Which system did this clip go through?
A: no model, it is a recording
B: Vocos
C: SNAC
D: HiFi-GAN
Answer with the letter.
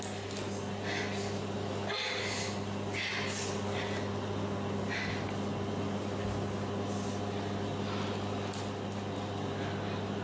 A